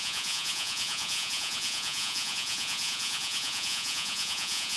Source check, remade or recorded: remade